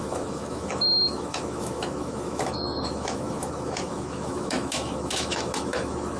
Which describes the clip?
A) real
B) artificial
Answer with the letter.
B